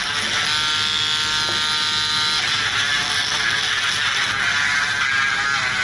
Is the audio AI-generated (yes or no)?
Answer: no